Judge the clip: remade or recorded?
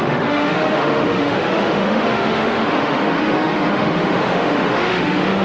remade